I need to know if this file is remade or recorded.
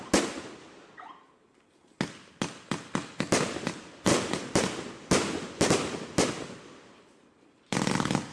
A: recorded